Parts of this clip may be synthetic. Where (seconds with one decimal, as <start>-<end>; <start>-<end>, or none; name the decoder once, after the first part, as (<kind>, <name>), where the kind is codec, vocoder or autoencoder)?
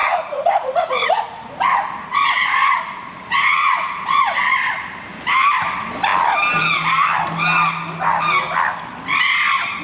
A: 0.0-4.4 (vocoder, Vocos)